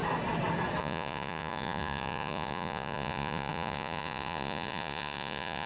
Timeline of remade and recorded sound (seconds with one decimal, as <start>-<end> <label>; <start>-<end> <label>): 0.0-0.8 recorded; 0.8-5.7 remade